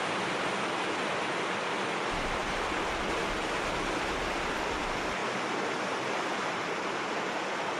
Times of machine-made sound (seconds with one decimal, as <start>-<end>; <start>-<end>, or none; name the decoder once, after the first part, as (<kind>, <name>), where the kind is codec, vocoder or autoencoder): 0.0-2.4 (vocoder, BigVGAN v2); 4.5-5.2; 5.8-7.8